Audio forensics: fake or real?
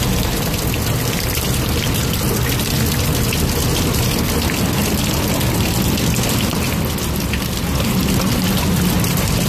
real